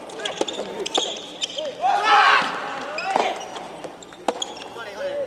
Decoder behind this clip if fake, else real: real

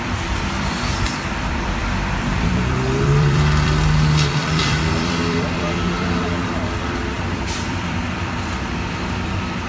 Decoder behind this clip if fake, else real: fake, vocoder, BigVGAN v2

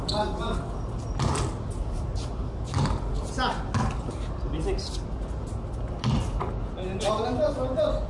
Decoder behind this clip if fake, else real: real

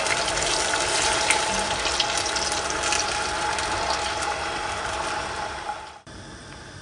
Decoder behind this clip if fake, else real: real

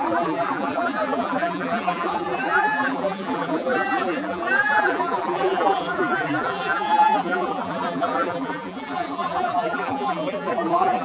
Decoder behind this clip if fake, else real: fake, vocoder, BigVGAN v2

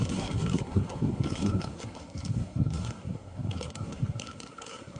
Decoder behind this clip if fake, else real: fake, codec, SNAC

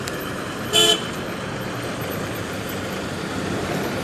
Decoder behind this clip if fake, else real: fake, vocoder, BigVGAN v2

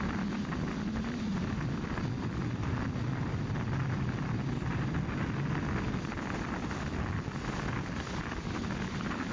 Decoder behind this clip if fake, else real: real